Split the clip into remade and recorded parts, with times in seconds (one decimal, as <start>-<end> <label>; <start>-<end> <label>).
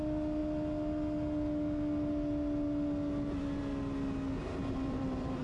0.0-4.4 recorded; 4.4-5.4 remade